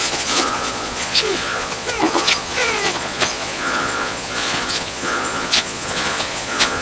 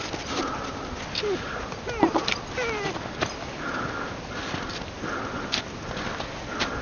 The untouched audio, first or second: second